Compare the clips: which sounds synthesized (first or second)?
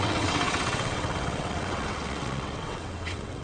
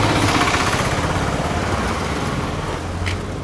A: first